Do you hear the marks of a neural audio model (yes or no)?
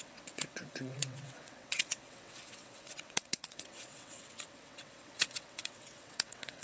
yes